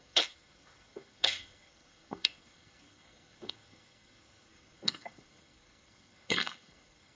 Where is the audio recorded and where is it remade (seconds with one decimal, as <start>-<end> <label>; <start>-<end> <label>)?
0.0-7.2 remade